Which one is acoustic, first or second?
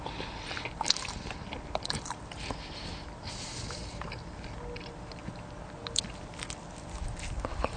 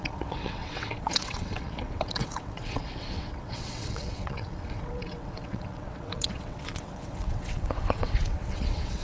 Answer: first